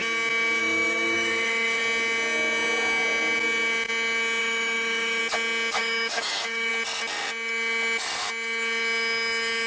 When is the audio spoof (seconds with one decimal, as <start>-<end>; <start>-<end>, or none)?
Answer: 0.6-1.8; 4.4-5.2; 5.8-6.7